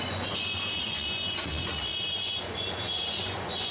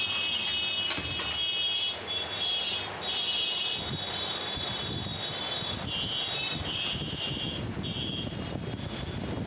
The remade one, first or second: first